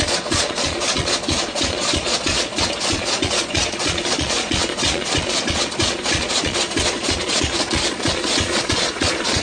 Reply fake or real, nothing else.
fake